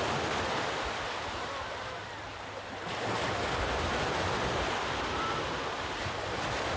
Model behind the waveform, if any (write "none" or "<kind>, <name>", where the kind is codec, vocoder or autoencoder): none